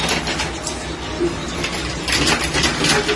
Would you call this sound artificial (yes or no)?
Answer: no